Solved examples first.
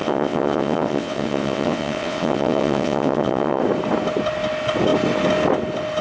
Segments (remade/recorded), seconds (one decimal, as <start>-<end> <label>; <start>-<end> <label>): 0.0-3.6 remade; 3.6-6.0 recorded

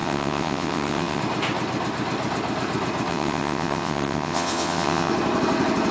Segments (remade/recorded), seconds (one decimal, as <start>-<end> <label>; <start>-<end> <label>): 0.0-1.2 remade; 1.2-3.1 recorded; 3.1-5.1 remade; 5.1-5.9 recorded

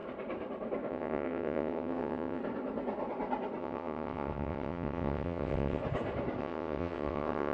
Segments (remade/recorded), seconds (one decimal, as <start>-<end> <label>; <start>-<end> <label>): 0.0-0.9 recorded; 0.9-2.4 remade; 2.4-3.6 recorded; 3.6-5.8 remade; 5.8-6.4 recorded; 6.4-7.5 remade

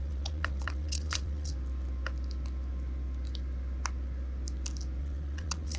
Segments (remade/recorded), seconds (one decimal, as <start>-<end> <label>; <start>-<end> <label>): 0.0-1.5 remade; 1.5-5.0 recorded; 5.0-5.8 remade